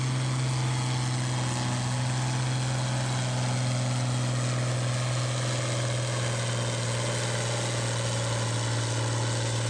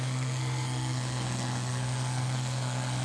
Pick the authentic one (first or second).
first